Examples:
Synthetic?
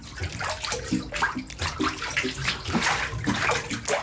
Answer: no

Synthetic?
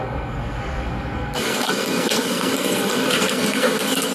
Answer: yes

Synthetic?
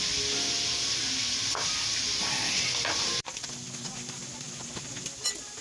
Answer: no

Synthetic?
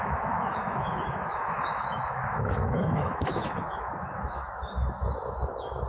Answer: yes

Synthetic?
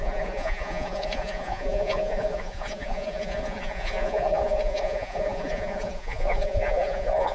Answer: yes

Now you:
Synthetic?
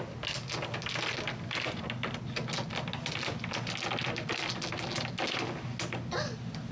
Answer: no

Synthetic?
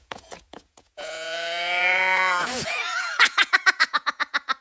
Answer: yes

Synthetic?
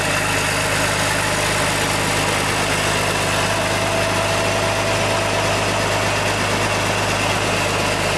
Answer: no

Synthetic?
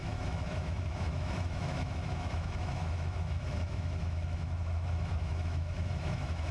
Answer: yes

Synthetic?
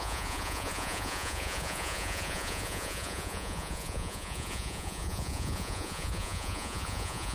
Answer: yes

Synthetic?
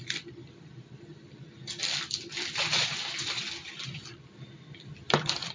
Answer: yes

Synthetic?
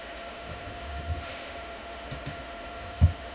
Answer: yes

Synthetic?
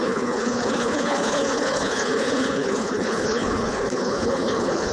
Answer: yes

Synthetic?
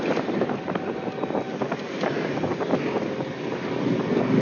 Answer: no